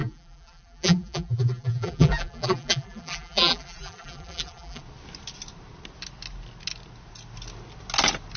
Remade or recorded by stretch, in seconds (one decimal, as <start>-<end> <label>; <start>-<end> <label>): 0.0-4.8 remade; 4.8-8.4 recorded